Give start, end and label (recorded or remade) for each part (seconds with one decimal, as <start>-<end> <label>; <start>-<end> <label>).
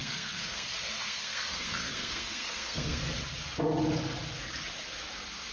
0.0-3.0 remade; 3.0-5.5 recorded